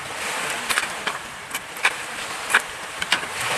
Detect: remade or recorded remade